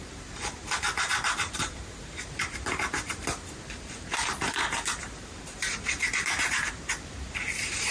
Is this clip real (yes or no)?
no